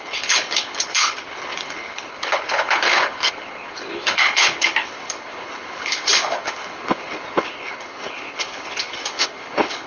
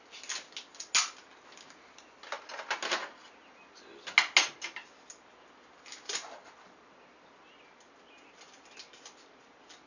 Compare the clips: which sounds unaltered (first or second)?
second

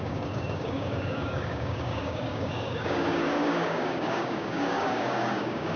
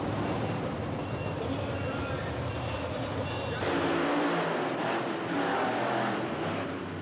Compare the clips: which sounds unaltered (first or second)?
second